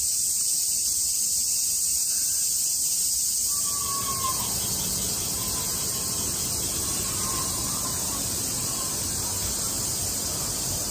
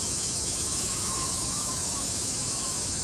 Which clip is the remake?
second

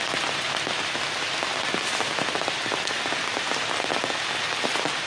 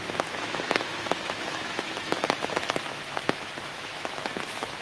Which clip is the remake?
second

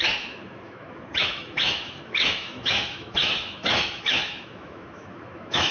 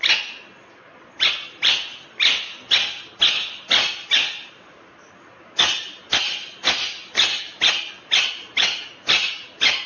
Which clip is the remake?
first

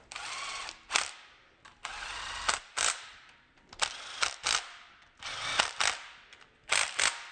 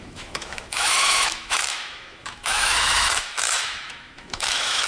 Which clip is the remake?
second